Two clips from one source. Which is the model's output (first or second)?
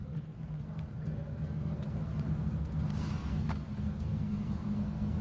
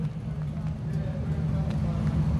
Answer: first